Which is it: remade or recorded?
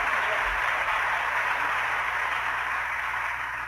remade